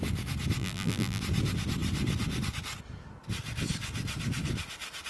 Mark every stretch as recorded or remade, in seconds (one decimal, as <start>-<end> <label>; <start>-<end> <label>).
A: 0.0-0.6 recorded; 0.6-1.2 remade; 1.2-5.1 recorded

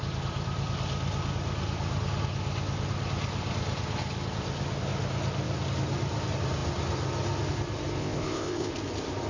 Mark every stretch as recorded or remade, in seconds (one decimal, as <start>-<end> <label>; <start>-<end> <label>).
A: 0.0-8.0 recorded; 8.0-8.7 remade; 8.7-9.3 recorded

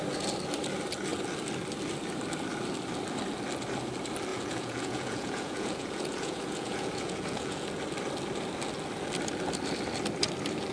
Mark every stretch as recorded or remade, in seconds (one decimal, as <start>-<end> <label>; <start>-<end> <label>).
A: 0.0-4.3 recorded; 4.3-7.8 remade; 7.8-10.7 recorded

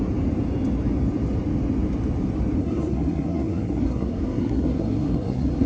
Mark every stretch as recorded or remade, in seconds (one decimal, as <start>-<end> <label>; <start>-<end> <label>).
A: 0.0-2.6 recorded; 2.6-5.7 remade

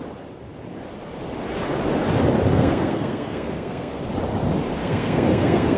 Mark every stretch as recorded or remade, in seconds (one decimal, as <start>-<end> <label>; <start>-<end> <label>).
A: 0.0-2.5 recorded; 2.5-4.0 remade; 4.0-4.8 recorded; 4.8-5.8 remade

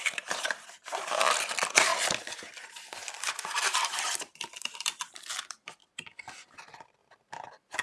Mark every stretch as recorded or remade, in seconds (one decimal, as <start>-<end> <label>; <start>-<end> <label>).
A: 0.0-1.9 remade; 1.9-3.9 recorded; 3.9-5.8 remade; 5.8-6.6 recorded; 6.6-7.0 remade; 7.0-7.8 recorded

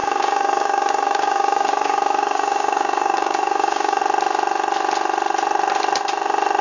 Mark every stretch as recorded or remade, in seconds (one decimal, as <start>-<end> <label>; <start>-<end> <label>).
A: 0.0-4.0 remade; 4.0-6.6 recorded